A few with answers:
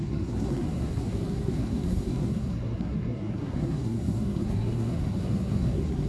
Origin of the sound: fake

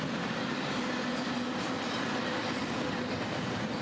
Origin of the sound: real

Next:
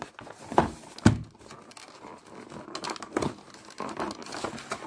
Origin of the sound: real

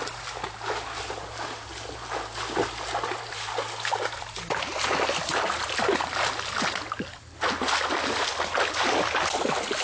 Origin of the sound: real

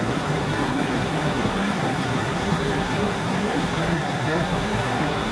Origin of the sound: fake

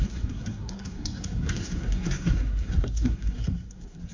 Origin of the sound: fake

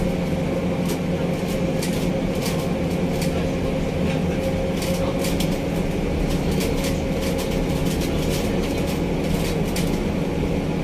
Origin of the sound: real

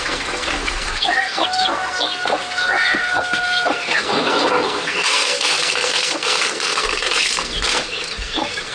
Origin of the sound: fake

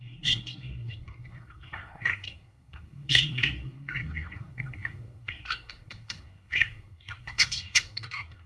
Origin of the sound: fake